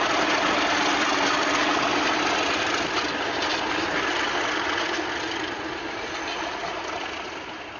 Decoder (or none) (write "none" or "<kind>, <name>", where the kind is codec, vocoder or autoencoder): none